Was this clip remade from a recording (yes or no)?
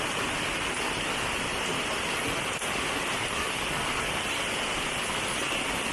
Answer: no